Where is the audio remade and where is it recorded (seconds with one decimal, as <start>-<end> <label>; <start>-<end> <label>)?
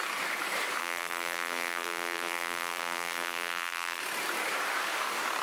0.0-0.8 recorded; 0.8-4.0 remade; 4.0-5.4 recorded